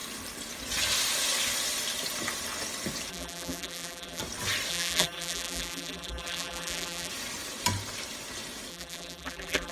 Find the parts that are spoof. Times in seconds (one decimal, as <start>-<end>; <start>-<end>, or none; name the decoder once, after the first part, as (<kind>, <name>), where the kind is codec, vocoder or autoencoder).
3.1-4.2 (vocoder, BigVGAN v2); 4.7-7.1; 8.7-9.7